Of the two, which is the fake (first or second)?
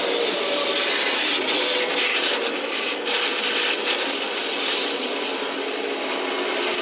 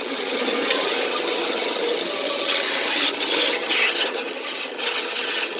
second